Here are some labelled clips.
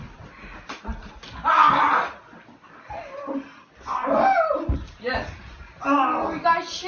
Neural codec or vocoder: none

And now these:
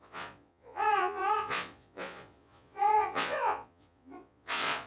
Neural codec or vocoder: vocoder, Vocos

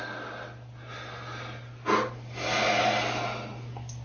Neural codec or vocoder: none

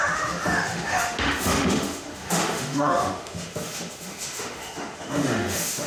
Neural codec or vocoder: autoencoder, DAC-VAE